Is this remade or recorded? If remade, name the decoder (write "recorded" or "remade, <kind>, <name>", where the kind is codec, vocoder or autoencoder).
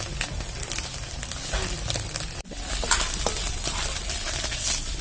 recorded